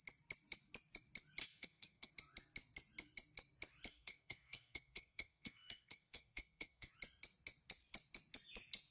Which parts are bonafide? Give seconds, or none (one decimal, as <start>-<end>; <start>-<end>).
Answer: 0.0-1.4; 2.1-3.9; 6.9-8.9